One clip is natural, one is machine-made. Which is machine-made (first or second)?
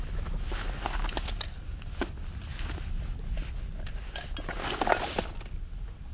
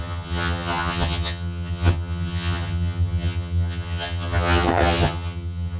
second